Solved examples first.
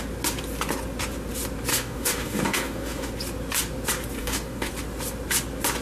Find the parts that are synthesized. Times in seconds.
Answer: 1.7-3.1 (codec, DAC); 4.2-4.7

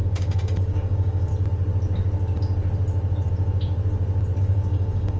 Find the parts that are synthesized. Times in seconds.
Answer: 0.0-1.3 (codec, DAC); 4.4-5.2

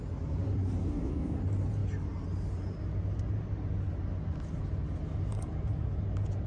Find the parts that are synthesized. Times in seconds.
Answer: 0.8-1.4 (codec, DAC)